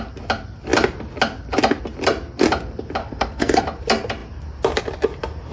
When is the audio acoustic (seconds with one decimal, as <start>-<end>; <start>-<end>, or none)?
0.0-3.0; 3.6-5.5